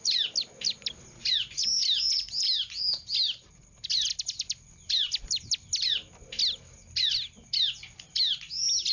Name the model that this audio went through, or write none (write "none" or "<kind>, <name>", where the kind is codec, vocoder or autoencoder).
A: none